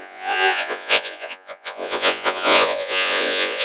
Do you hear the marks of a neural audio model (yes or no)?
yes